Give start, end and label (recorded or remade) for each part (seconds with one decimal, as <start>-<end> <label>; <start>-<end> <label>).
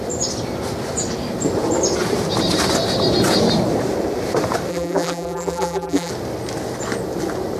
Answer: 0.0-4.7 recorded; 4.7-6.1 remade; 6.1-7.6 recorded